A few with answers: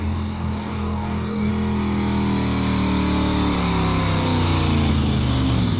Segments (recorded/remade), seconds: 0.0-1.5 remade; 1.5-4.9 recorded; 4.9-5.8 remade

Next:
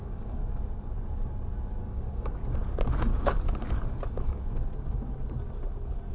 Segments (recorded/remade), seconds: 0.0-0.4 remade; 0.4-1.8 recorded; 1.8-2.4 remade; 2.4-6.1 recorded